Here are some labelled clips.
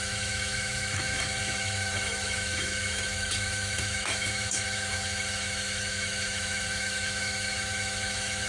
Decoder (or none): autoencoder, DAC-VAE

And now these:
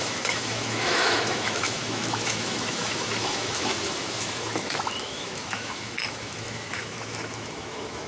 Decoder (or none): autoencoder, DAC-VAE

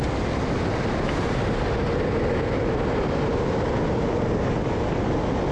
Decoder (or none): none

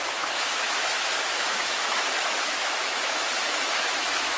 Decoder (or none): autoencoder, DAC-VAE